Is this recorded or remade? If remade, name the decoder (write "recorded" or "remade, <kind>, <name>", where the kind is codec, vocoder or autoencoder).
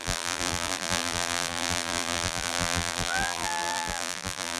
remade, vocoder, BigVGAN v2